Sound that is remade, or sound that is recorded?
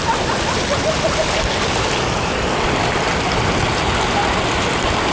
recorded